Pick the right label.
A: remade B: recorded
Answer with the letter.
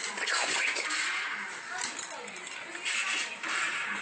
B